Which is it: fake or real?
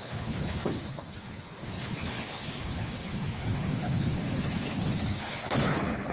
fake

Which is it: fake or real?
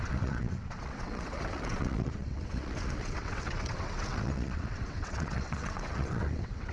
fake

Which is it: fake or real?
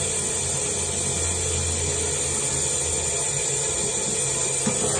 real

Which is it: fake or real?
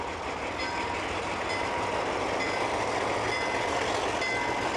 real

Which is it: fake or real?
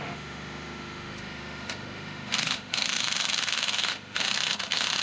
fake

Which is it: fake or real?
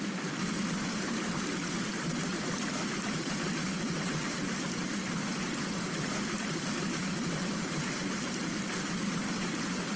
real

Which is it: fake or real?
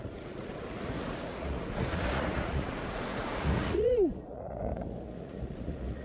fake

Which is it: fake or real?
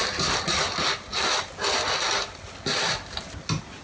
real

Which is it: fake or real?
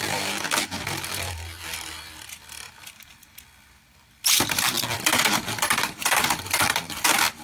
fake